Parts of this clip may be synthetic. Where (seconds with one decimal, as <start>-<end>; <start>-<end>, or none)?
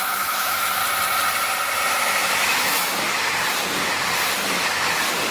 0.0-0.8; 2.0-2.9